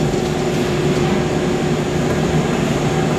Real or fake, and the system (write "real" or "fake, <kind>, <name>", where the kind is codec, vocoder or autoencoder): real